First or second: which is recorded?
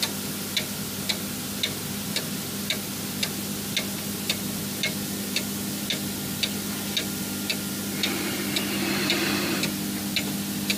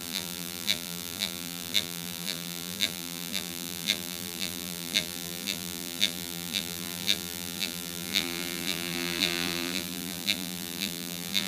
first